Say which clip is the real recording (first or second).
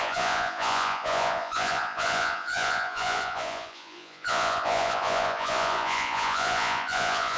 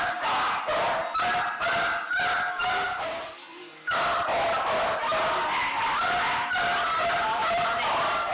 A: second